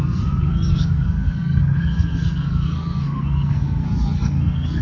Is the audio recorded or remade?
remade